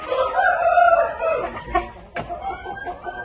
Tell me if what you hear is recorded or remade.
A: recorded